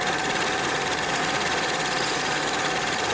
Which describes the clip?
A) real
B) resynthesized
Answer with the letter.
B